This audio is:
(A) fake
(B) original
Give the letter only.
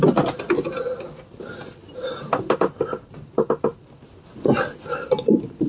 B